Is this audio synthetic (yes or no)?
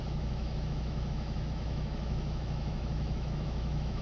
yes